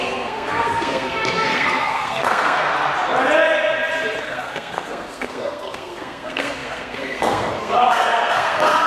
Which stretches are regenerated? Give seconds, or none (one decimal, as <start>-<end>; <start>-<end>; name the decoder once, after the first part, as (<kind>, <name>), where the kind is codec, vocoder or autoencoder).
0.0-2.7 (codec, SNAC); 4.2-8.9